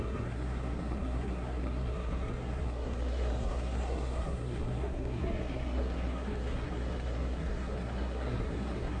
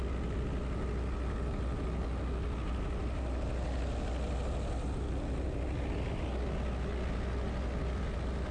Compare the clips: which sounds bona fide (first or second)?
second